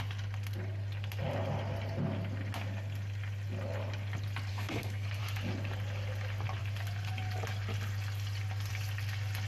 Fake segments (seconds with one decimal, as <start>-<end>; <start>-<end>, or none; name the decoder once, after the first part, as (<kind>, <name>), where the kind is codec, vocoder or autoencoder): 4.5-5.2 (codec, SNAC)